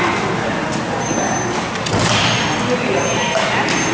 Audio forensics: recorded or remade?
recorded